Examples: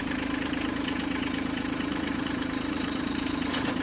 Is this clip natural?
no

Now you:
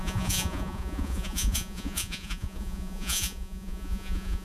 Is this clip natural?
no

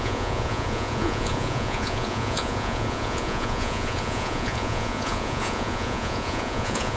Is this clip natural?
no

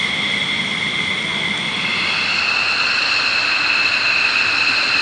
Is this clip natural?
yes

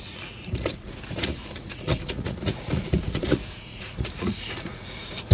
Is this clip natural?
no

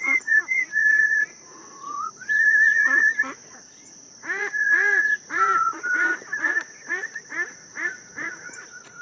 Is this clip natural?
no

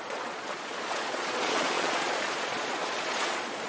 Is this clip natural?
no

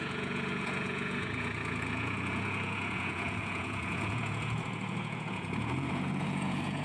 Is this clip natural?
no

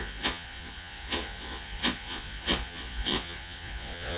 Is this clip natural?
no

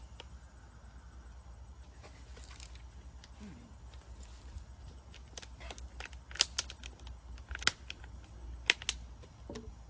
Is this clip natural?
yes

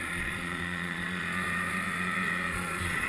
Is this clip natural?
no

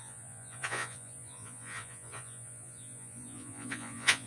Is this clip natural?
no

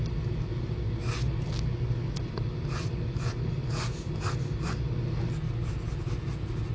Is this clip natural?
yes